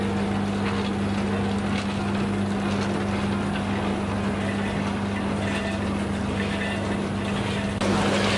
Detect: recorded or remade recorded